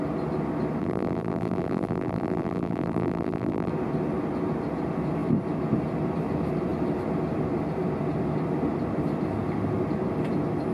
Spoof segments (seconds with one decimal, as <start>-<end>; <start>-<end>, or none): 0.8-3.7